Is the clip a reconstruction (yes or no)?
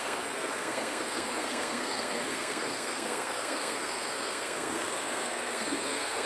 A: yes